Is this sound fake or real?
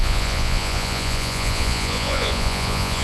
fake